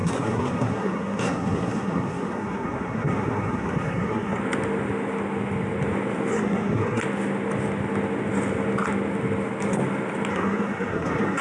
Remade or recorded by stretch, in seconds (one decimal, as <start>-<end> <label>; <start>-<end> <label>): 0.0-4.4 remade; 4.4-6.3 recorded; 6.3-7.0 remade; 7.0-10.3 recorded; 10.3-11.4 remade